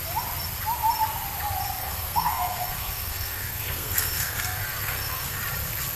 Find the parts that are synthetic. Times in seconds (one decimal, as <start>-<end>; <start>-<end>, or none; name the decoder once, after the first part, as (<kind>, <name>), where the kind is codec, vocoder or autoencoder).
1.8-5.4 (codec, SNAC)